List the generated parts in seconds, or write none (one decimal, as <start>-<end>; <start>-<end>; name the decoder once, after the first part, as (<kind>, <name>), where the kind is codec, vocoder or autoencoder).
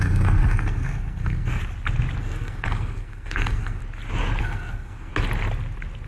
0.0-1.6 (codec, SNAC); 2.2-3.8; 4.4-5.1